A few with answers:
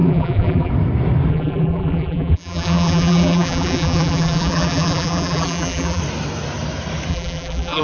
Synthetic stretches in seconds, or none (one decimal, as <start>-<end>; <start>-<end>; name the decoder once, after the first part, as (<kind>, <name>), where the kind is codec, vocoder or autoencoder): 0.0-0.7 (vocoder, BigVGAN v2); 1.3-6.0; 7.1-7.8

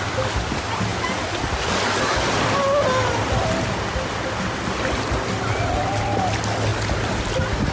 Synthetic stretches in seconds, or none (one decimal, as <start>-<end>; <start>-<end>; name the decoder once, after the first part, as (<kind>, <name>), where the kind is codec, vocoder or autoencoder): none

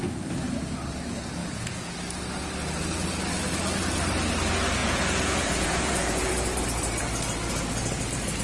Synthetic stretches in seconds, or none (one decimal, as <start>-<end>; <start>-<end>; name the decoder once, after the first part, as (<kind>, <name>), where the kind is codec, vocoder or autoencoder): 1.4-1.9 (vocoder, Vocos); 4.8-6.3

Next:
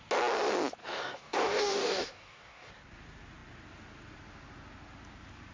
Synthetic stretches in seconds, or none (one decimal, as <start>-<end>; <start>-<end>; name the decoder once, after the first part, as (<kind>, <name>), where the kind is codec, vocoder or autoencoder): 0.8-2.7 (codec, DAC)